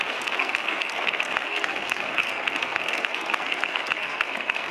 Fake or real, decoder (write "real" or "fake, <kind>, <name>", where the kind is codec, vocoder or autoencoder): fake, codec, SNAC